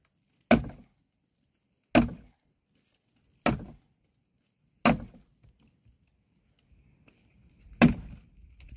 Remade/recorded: recorded